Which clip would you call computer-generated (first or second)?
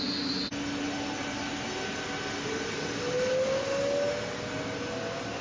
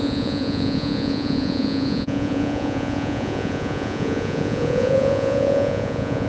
second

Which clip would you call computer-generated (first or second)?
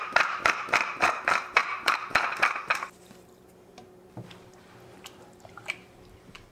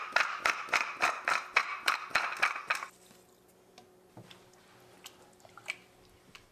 first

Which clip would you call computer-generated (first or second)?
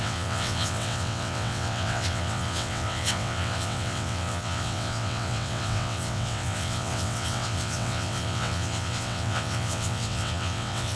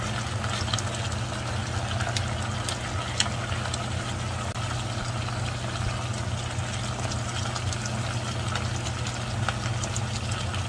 first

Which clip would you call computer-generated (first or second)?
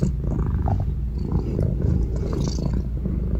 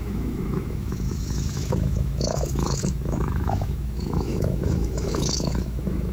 second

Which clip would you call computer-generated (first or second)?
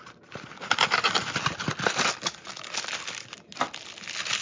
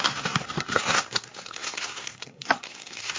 second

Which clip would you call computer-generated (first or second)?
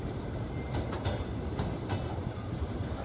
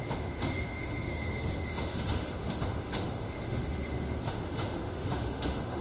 second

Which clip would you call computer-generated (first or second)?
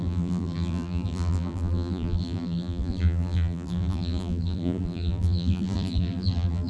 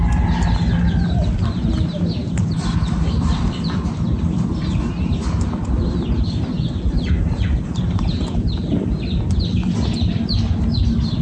first